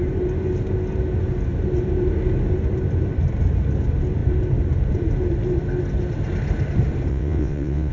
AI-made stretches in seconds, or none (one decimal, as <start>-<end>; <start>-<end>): 7.1-7.9